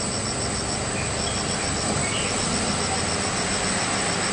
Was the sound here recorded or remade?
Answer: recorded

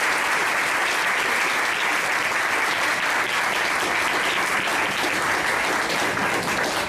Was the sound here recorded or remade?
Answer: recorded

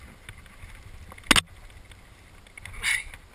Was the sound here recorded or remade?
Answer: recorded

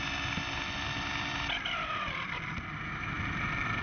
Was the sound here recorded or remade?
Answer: recorded